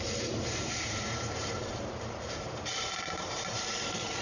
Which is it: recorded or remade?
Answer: remade